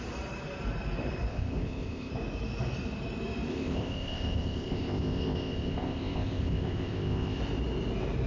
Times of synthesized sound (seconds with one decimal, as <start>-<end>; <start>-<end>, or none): 1.3-2.1; 3.5-7.4